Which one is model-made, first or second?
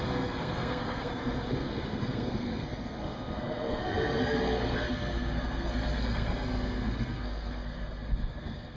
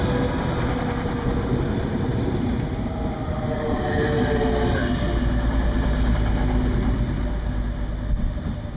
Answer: first